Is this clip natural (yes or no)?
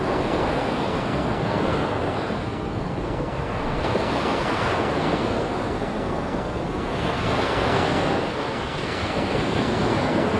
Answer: no